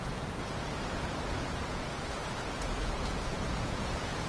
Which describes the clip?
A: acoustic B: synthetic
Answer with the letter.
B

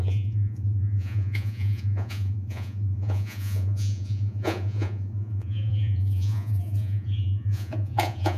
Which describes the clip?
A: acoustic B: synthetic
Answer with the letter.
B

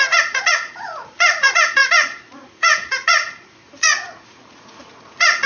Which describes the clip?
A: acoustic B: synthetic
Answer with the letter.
B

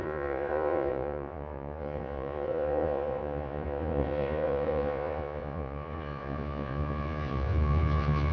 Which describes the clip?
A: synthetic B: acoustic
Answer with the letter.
A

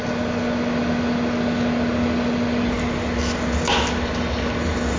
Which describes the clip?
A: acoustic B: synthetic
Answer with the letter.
A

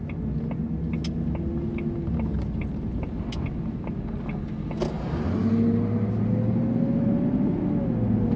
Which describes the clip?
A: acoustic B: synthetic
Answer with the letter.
A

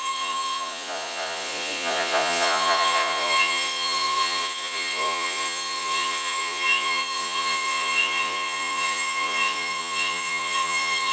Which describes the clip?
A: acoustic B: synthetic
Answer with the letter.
B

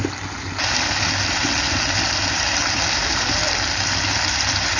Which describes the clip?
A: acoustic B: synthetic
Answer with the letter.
A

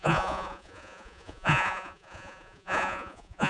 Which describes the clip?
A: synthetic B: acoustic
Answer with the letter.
A